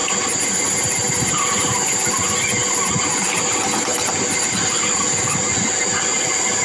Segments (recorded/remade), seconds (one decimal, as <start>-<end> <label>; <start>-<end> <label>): 0.0-6.6 recorded